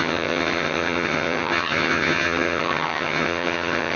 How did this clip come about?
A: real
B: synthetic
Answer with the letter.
B